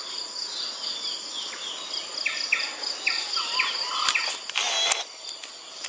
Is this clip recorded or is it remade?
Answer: recorded